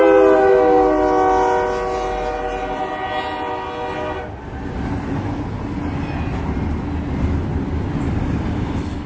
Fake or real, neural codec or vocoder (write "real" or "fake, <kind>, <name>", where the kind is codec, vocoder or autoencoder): real